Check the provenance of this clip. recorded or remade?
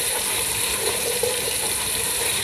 remade